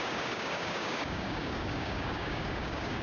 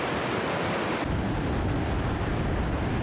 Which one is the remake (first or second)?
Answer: first